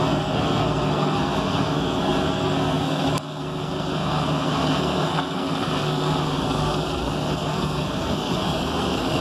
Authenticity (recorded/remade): remade